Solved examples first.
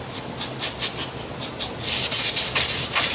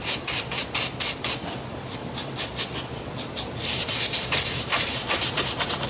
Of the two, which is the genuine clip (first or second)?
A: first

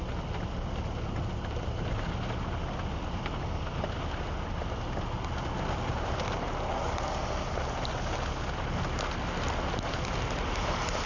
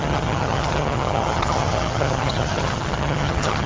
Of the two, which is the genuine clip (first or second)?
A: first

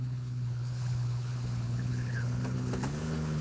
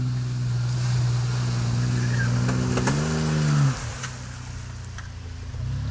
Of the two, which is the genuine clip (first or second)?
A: second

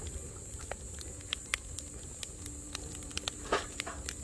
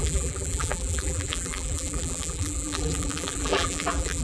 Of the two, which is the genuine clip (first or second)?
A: first